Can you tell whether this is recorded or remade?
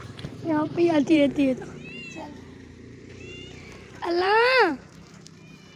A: remade